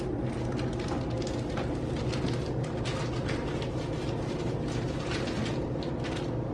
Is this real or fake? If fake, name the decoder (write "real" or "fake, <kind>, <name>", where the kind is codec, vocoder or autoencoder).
real